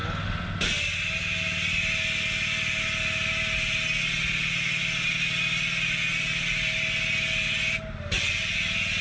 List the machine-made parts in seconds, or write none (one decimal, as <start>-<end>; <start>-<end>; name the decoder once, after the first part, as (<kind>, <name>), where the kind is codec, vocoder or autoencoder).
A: none